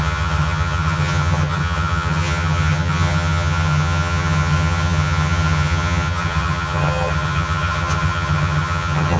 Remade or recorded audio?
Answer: remade